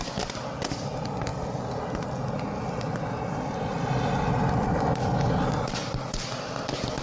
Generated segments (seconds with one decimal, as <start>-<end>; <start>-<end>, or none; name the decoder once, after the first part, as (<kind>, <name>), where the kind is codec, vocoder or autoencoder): none